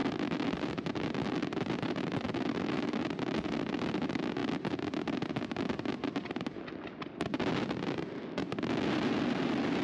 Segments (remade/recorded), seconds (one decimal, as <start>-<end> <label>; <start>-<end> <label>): 0.0-4.4 remade; 4.4-9.4 recorded; 9.4-9.8 remade